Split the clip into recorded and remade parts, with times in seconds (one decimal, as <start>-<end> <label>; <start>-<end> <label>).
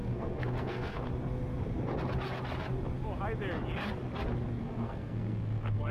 0.0-1.1 remade; 1.1-4.6 recorded; 4.6-5.9 remade